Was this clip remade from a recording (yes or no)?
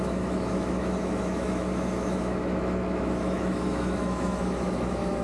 yes